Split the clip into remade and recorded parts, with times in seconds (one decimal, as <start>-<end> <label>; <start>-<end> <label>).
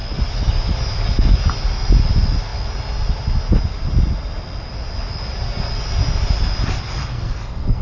0.0-7.0 recorded; 7.0-7.8 remade